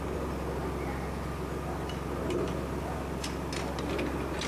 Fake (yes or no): no